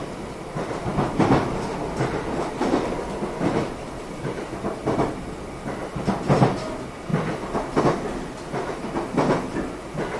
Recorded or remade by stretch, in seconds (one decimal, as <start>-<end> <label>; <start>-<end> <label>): 0.0-10.2 recorded